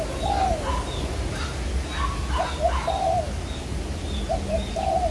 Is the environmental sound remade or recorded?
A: recorded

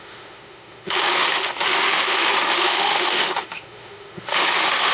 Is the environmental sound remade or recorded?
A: remade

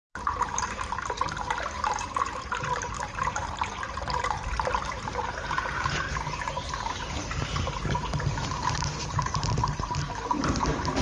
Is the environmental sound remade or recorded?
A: remade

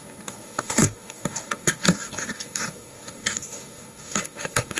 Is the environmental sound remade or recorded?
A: remade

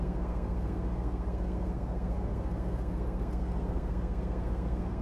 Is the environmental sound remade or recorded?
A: remade